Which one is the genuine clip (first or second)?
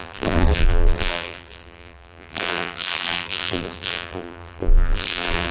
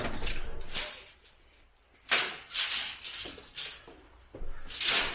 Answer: second